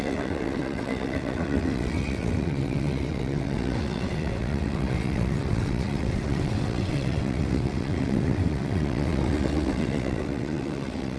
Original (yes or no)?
no